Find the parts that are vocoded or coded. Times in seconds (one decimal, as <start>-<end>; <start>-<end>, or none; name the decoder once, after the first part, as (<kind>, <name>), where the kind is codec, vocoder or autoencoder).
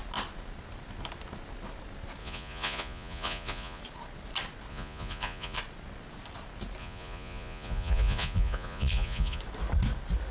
2.2-3.8 (vocoder, Vocos); 4.7-5.6; 6.8-9.4